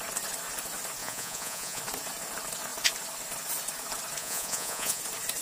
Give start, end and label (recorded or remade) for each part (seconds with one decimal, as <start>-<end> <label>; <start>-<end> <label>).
0.0-1.0 recorded; 1.0-1.8 remade; 1.8-4.2 recorded; 4.2-5.0 remade; 5.0-5.4 recorded